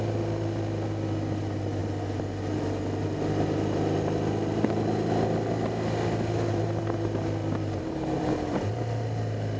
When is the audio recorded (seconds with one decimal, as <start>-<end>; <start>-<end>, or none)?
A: 0.0-9.6